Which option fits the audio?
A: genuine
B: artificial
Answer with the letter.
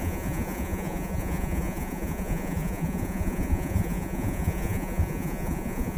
B